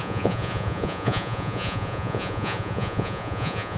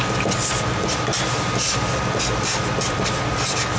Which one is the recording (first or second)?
second